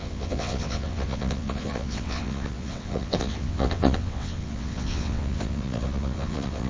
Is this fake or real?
fake